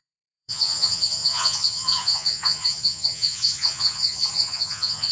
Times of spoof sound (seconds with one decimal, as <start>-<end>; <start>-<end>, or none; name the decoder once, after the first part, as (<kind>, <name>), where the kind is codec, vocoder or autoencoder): 0.0-5.1 (vocoder, Vocos)